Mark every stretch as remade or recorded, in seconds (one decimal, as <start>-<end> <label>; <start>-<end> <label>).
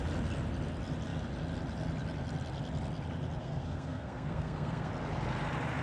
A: 0.0-3.4 recorded; 3.4-4.9 remade; 4.9-5.8 recorded